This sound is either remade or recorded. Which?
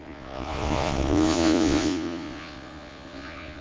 remade